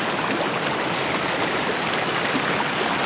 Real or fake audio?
real